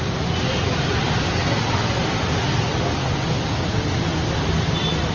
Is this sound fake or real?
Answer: real